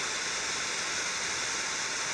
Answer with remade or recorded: recorded